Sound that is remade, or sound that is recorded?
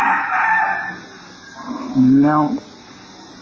recorded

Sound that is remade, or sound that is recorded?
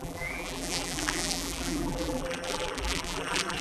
remade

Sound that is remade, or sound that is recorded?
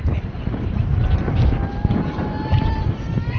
remade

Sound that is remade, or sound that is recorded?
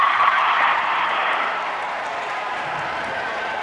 remade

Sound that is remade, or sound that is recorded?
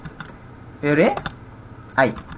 remade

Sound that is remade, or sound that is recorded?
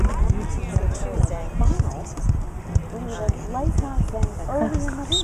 recorded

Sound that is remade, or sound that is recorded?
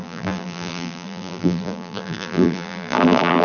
remade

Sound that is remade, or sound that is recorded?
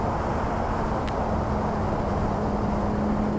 recorded